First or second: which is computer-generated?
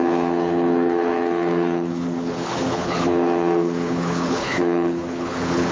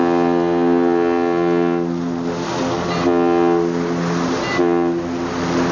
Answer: first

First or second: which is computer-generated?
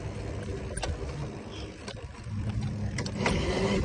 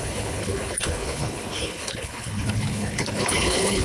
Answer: second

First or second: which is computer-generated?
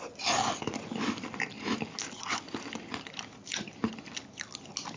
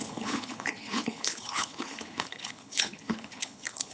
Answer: second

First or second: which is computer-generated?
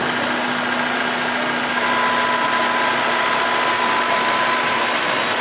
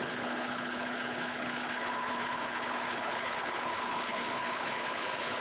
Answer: second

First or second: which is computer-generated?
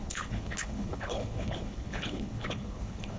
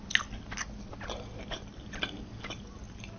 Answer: first